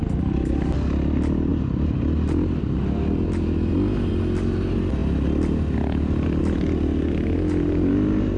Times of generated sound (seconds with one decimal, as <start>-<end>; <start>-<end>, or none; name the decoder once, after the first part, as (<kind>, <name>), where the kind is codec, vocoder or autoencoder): none